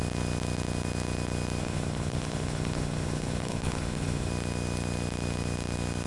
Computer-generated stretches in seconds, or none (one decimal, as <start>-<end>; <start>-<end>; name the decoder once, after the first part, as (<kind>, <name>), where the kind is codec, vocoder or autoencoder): 1.6-4.3 (codec, HILCodec)